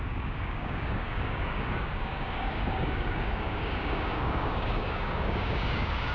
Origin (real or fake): fake